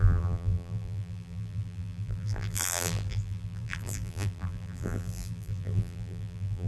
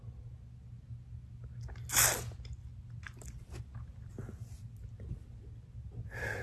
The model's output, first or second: first